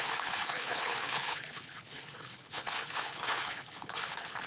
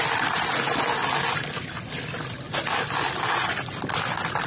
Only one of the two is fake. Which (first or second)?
first